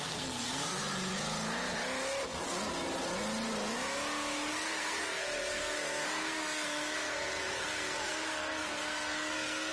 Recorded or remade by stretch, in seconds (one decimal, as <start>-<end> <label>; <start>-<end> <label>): 0.0-0.8 remade; 0.8-4.5 recorded; 4.5-9.7 remade